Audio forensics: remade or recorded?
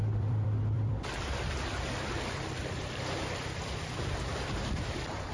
remade